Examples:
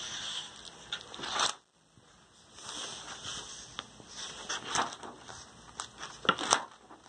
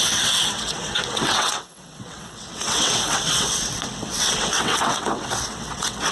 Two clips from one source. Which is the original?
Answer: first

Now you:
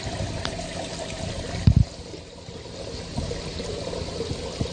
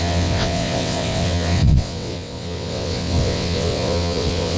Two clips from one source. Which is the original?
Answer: first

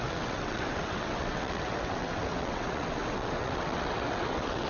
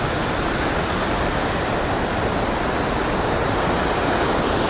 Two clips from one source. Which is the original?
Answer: second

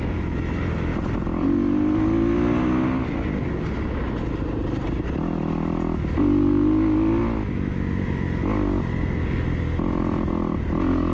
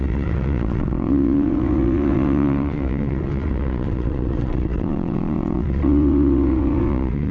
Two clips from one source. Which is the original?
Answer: first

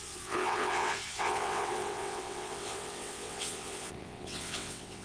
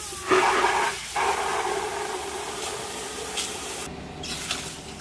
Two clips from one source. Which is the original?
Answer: second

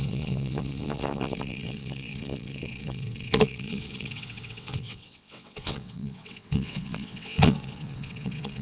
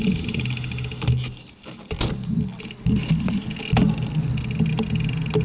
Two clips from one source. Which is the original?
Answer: second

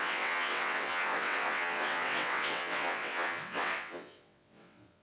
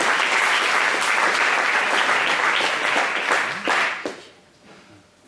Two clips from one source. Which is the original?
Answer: second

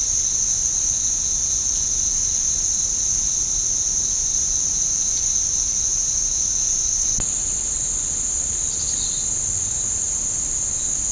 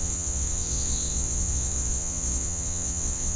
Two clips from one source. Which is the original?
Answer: first